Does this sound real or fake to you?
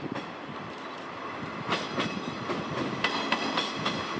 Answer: real